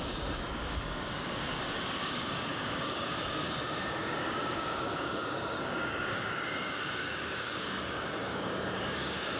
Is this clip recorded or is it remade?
remade